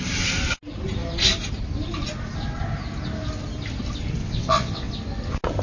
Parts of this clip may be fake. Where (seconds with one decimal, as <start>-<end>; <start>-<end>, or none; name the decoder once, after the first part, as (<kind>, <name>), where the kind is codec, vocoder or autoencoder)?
4.2-4.9 (vocoder, WaveNeXt)